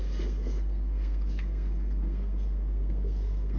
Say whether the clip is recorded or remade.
remade